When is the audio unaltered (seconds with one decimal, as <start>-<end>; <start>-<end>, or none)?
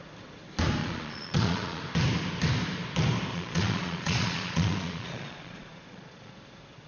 0.0-0.8; 1.8-3.3; 6.3-6.9